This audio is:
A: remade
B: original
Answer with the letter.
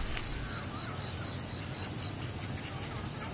B